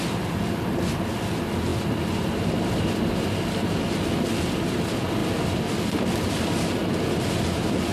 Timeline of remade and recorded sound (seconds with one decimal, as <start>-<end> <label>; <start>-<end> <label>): 0.0-7.9 recorded